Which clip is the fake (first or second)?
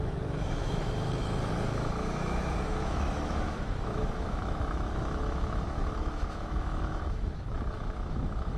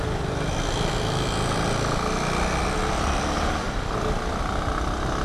first